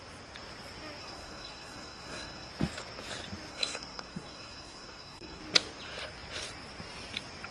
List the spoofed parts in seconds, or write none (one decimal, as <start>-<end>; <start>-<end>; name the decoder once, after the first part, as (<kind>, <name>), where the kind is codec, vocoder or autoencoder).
1.0-2.5 (codec, SNAC); 3.5-5.4